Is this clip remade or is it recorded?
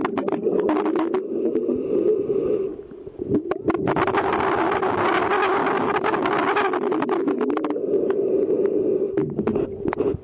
recorded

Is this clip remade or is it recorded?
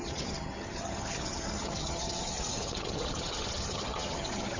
remade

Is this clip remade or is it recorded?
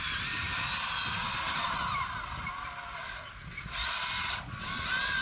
recorded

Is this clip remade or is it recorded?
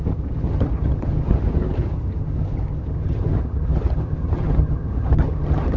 remade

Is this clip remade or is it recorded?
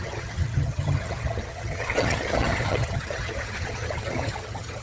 remade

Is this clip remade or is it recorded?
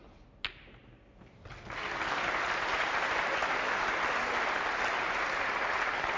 recorded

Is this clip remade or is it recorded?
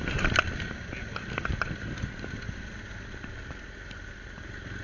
recorded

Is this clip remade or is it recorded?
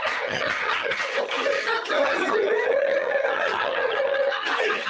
remade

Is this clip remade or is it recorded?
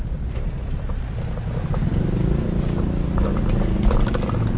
recorded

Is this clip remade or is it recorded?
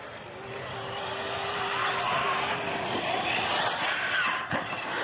recorded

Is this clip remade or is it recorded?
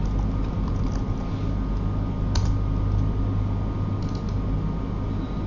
recorded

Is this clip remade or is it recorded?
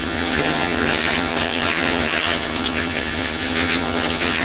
remade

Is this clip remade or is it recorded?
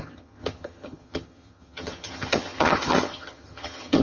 remade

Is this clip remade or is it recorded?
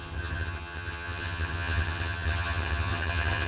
remade